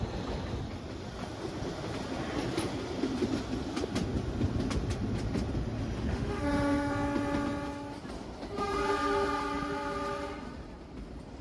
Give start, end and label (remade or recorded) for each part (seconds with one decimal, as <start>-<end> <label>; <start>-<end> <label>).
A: 0.0-6.1 recorded; 6.1-6.9 remade; 6.9-11.4 recorded